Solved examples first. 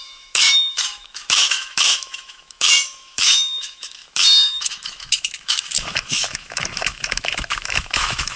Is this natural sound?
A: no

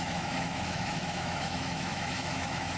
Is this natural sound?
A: no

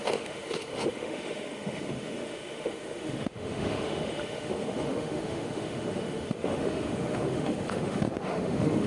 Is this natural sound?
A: no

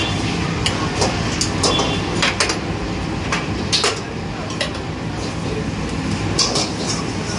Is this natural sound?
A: yes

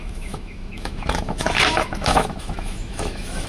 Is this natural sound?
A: no